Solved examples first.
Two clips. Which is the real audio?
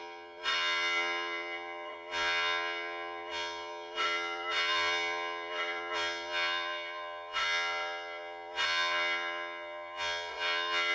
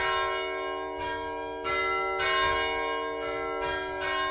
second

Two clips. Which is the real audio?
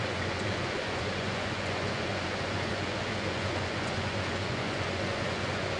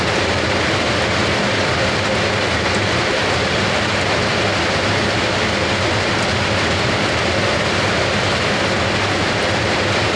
second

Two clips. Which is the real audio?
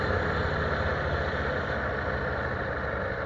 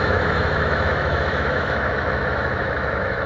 first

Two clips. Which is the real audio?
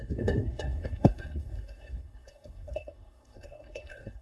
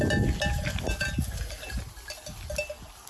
second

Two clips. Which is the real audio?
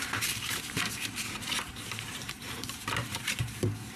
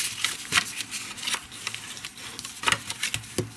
second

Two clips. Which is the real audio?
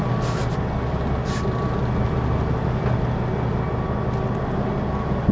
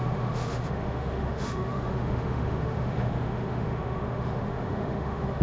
first